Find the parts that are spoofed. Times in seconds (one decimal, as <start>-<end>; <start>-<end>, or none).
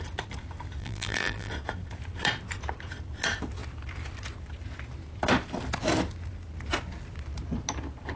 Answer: 0.8-1.5